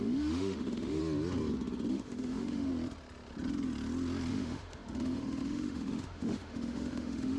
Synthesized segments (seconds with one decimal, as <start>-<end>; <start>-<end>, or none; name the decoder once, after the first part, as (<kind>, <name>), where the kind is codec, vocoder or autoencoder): 0.0-1.0 (autoencoder, DAC-VAE); 1.9-2.7; 4.3-7.4